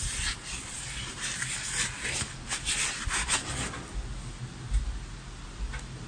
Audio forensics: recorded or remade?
recorded